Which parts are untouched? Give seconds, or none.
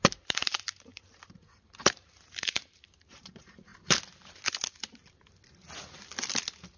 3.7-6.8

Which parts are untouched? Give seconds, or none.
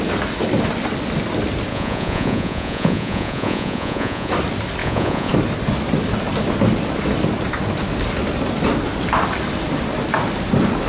0.0-1.7; 4.3-4.8; 5.3-10.9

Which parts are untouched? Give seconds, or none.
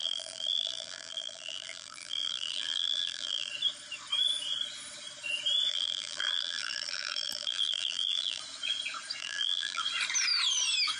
3.5-5.7; 8.4-9.2; 9.8-11.0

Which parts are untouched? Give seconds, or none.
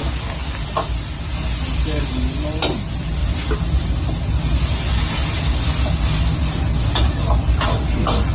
0.0-8.3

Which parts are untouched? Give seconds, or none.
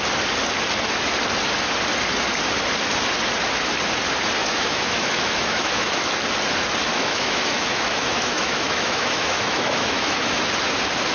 0.0-4.4; 6.1-6.9; 10.4-11.1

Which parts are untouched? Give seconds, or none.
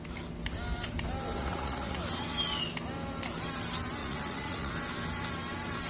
0.0-1.4; 2.0-4.0; 4.7-5.9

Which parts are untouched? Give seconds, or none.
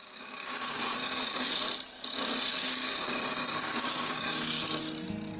1.5-2.5; 4.8-5.4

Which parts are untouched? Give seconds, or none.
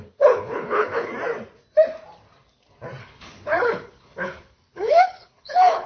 1.1-3.0